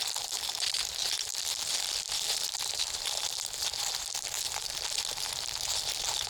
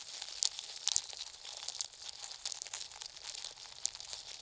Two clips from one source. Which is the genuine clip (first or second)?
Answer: second